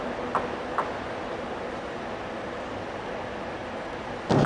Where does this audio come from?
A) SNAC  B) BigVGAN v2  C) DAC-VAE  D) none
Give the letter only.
D